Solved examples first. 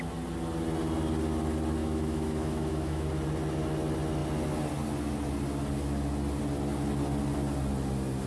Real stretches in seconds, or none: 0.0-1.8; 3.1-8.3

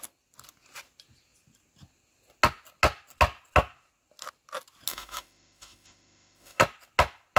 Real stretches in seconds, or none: 0.0-4.9; 6.6-7.4

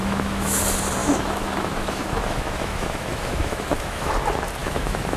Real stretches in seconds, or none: 0.6-1.0; 4.1-4.6

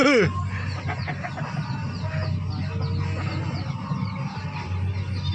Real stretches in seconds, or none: 0.0-5.3

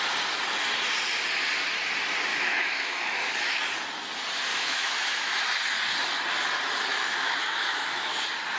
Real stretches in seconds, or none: 0.0-2.3; 3.6-4.5; 5.4-6.9; 8.2-8.6

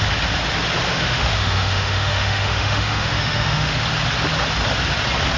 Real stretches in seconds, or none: 0.0-0.9; 3.8-5.4

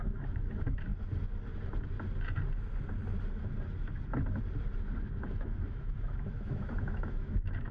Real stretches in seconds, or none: 0.9-5.2

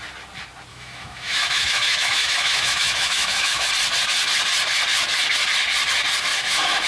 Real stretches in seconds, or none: 0.0-0.7; 3.7-6.3